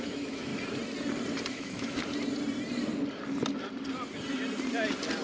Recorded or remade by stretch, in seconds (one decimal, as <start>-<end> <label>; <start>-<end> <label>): 0.0-0.5 remade; 0.5-1.5 recorded; 1.5-2.0 remade; 2.0-5.2 recorded